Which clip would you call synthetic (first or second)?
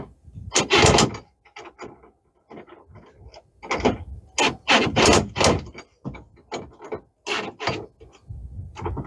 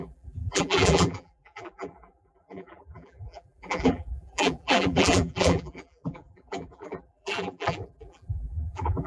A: second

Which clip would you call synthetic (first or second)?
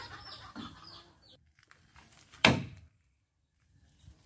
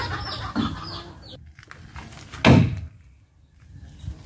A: first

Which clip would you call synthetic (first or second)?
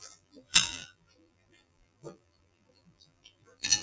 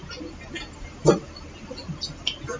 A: first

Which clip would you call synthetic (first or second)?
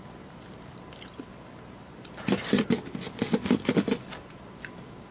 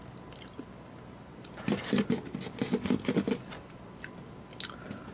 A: first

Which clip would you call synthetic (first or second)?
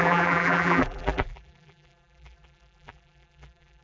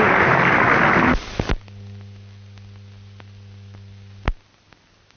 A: first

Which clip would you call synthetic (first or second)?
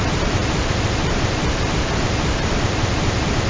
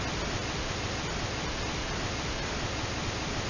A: first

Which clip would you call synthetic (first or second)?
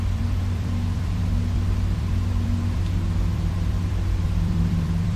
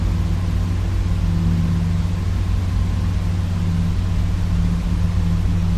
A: first